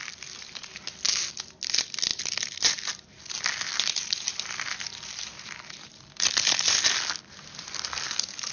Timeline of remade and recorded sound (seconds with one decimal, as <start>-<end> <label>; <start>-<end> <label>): 0.0-8.5 recorded